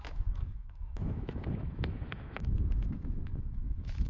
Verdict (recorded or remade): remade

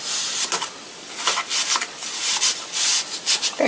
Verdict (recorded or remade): recorded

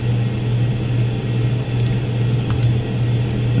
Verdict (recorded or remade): recorded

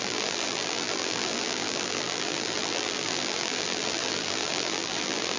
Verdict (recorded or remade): remade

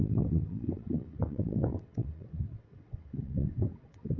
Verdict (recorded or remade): remade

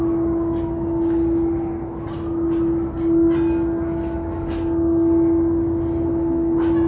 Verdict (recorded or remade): recorded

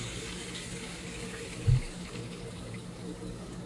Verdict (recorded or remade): remade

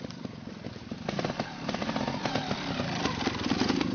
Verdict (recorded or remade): remade